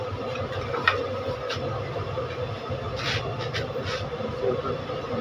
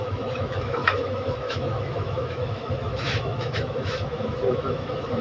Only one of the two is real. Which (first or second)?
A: first